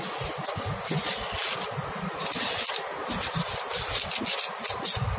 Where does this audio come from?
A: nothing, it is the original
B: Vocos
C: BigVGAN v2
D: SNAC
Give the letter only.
A